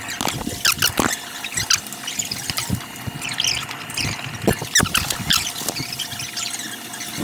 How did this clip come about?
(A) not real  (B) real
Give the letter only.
B